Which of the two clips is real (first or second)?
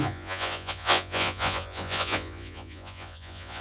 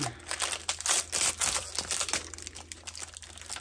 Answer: second